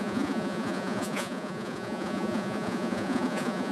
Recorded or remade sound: remade